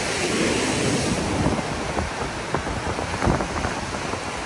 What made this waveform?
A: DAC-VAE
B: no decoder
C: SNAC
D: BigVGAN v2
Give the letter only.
B